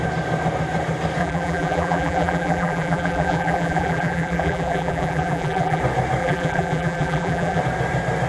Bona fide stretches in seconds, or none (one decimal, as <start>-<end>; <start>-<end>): 0.0-1.2; 5.8-6.2; 7.6-8.3